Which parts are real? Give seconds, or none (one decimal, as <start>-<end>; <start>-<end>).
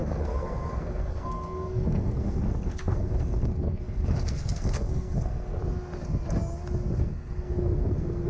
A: 5.6-7.0